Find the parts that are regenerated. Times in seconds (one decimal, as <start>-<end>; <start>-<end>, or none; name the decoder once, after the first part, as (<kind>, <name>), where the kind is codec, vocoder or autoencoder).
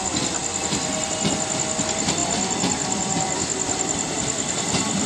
0.4-1.0 (vocoder, BigVGAN v2); 2.2-5.1